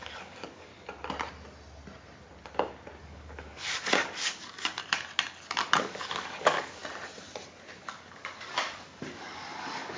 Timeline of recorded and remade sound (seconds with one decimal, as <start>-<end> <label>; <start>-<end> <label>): 0.0-0.7 remade; 0.7-3.0 recorded; 3.0-4.8 remade; 4.8-5.8 recorded; 5.8-6.8 remade; 6.8-7.8 recorded; 7.8-10.0 remade